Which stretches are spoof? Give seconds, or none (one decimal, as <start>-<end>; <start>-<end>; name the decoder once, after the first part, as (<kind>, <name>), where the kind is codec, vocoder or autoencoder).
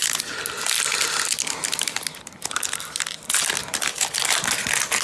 3.6-4.2 (vocoder, BigVGAN v2)